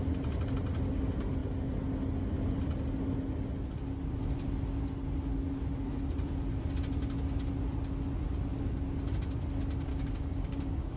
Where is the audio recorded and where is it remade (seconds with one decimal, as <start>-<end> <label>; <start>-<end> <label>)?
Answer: 0.0-9.9 recorded; 9.9-11.0 remade